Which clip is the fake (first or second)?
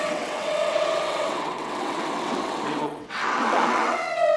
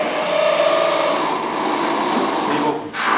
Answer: first